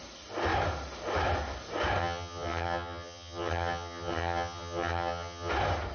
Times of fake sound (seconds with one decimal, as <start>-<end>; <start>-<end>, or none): 2.0-5.5